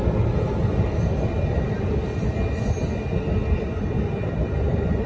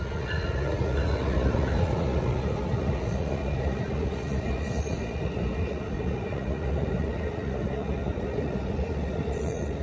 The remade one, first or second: second